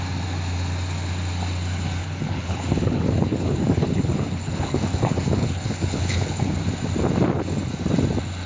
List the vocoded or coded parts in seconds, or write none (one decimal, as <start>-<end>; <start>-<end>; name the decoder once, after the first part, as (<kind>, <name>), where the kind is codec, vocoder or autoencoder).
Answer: 2.0-6.6 (codec, HILCodec)